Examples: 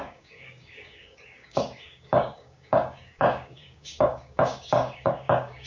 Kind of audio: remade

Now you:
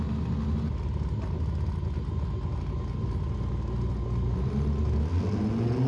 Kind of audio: recorded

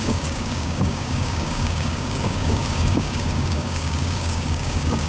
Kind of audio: remade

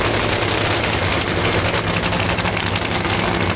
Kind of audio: recorded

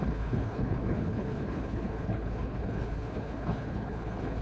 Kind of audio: remade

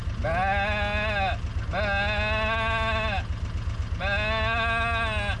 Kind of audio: recorded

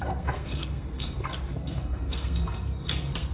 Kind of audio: remade